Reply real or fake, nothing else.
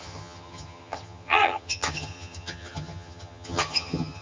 fake